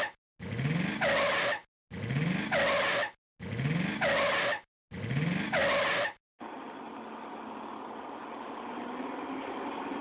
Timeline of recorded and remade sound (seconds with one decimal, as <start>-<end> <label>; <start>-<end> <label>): 0.0-10.0 recorded